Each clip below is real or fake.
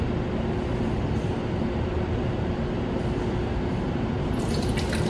real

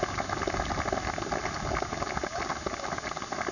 real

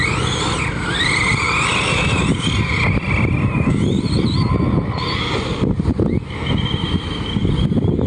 real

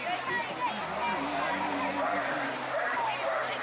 real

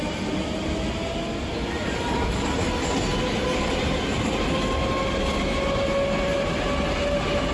real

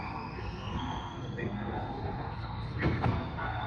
fake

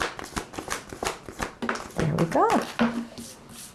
real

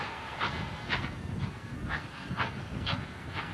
fake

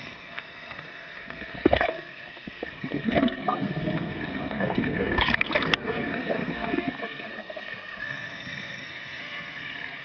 fake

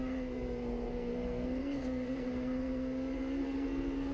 fake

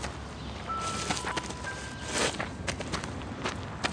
real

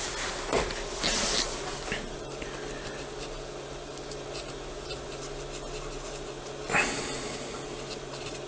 real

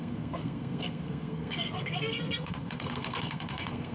fake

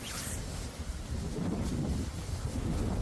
real